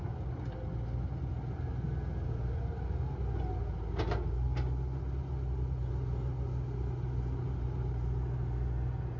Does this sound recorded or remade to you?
recorded